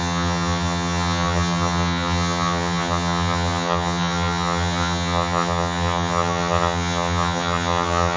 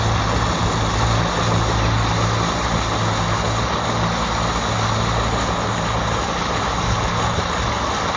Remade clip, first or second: first